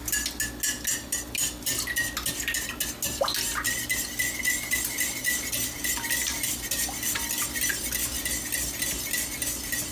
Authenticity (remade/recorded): recorded